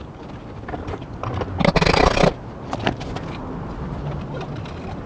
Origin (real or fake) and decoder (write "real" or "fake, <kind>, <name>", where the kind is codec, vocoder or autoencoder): real